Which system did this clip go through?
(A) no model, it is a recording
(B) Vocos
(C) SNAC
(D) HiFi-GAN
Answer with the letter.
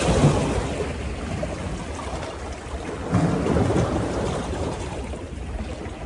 A